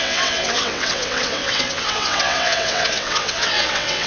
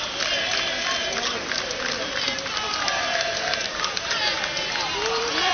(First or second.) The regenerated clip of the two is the first